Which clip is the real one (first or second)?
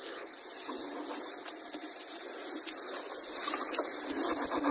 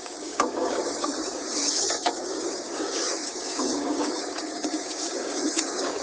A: first